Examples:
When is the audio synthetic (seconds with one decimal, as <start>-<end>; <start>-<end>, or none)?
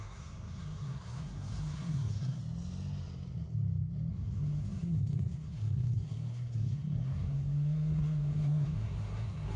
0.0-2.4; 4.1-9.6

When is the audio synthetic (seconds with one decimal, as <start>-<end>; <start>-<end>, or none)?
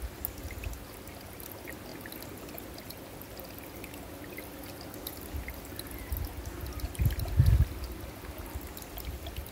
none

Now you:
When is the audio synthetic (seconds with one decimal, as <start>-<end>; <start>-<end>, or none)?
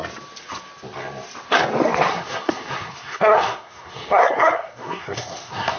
2.1-5.8